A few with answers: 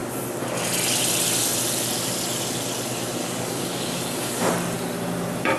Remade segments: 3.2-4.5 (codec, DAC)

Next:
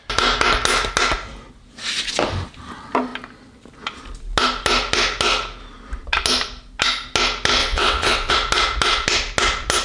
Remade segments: 7.6-8.3 (vocoder, WaveNeXt)

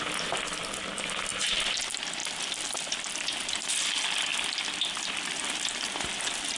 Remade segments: 2.2-3.7 (vocoder, BigVGAN v2); 4.3-6.6

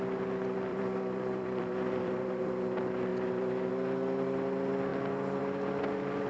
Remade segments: 0.7-2.4 (vocoder, BigVGAN v2); 3.1-3.7

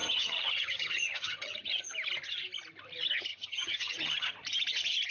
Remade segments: 0.0-1.8 (vocoder, HiFi-GAN); 3.3-4.3

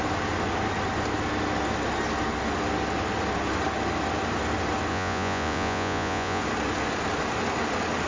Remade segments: 4.9-6.4 (vocoder, Vocos)

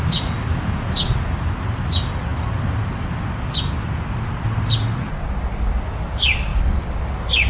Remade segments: none